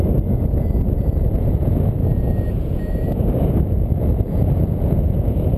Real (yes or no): no